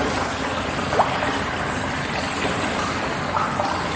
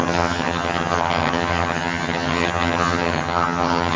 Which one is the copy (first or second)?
second